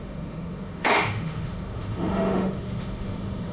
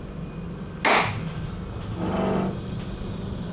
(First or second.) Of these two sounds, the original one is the second